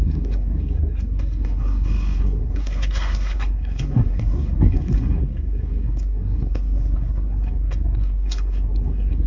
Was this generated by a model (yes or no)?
yes